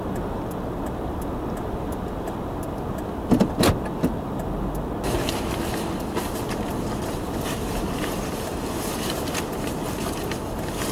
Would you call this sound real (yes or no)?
yes